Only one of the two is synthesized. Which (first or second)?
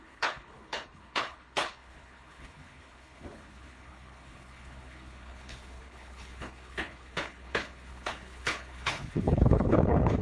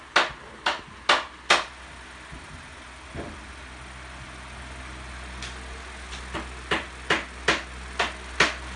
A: first